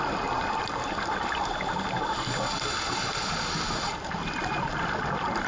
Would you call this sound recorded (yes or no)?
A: yes